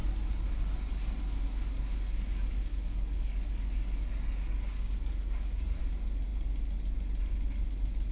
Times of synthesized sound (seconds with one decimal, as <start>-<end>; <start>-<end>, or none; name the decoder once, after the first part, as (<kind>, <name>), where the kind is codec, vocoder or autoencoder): 2.7-5.8 (codec, DAC)